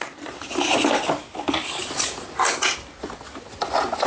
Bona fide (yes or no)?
yes